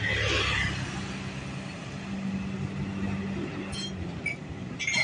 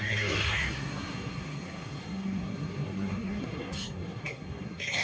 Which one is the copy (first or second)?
second